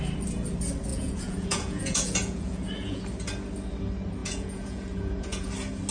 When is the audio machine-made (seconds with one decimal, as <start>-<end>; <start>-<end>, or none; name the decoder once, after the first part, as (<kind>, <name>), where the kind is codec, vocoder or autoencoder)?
0.9-3.0 (vocoder, Vocos); 4.2-5.5